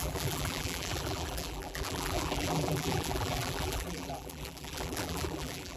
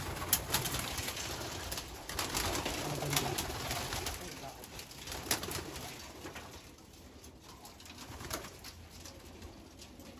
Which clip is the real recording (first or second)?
second